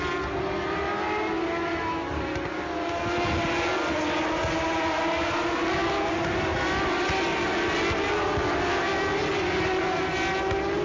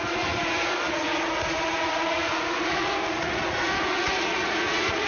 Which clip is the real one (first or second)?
first